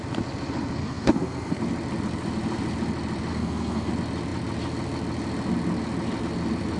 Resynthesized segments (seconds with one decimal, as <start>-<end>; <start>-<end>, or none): 0.8-1.6; 3.3-3.9

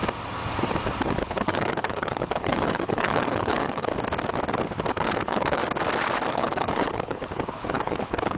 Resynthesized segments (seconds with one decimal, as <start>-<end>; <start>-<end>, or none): 1.2-3.9; 4.9-5.6; 6.3-8.4